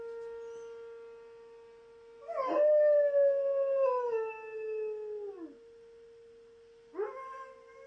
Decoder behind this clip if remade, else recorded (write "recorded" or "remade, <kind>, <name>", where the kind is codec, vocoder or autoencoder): recorded